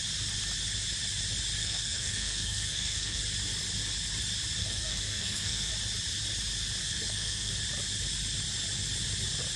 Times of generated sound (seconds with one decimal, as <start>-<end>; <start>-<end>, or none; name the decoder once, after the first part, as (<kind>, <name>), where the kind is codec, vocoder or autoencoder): 1.6-3.2 (codec, SNAC); 4.6-5.7; 6.8-7.5